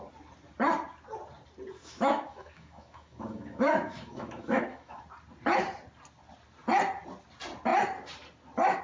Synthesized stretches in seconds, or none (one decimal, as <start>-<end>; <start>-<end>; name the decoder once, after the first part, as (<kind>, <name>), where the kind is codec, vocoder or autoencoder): 1.8-5.0 (autoencoder, DAC-VAE)